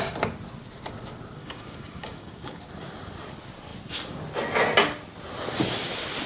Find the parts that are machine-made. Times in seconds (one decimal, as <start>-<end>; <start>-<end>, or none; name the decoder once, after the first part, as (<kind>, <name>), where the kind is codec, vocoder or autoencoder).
1.4-2.6 (codec, DAC)